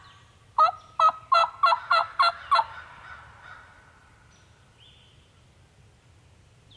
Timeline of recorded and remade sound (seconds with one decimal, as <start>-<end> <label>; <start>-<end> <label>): 0.0-6.8 recorded